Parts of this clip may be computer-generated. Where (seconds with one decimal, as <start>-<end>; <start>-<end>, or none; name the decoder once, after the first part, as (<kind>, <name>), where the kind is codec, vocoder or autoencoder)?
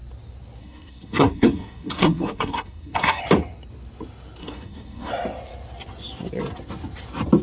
0.6-3.2 (codec, SNAC); 4.4-5.1